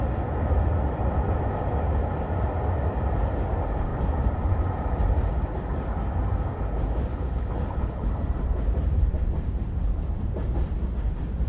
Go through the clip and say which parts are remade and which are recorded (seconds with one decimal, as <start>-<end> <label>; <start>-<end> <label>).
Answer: 0.0-7.1 recorded; 7.1-8.1 remade; 8.1-11.5 recorded